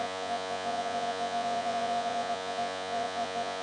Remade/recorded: remade